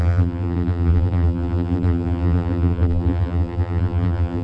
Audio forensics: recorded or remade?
remade